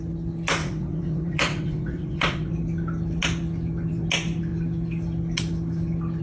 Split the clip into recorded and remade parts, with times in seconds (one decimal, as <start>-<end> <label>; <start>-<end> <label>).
0.0-0.6 recorded; 0.6-2.5 remade; 2.5-6.2 recorded